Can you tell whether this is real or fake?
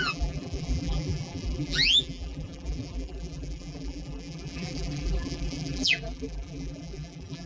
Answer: fake